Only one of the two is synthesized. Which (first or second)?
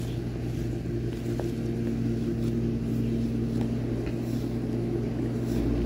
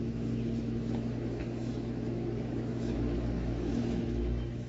second